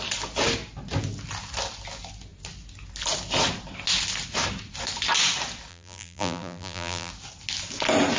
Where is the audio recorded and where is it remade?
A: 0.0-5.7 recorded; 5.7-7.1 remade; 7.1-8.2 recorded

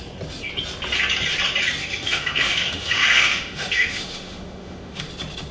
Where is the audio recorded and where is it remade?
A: 0.0-1.8 recorded; 1.8-5.1 remade; 5.1-5.5 recorded

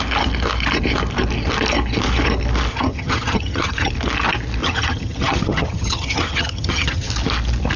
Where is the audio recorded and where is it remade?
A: 0.0-2.7 recorded; 2.7-3.9 remade; 3.9-4.6 recorded; 4.6-7.1 remade; 7.1-7.8 recorded

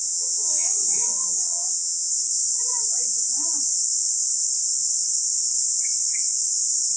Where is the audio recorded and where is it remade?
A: 0.0-2.1 remade; 2.1-7.0 recorded